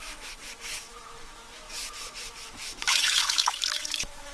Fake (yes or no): yes